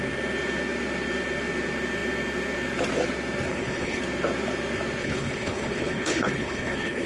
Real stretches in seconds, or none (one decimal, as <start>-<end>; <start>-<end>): 0.0-3.5; 4.0-5.0